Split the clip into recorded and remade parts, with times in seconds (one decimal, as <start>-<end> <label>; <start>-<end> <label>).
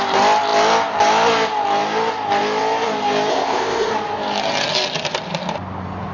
0.0-3.3 recorded; 3.3-3.9 remade; 3.9-6.1 recorded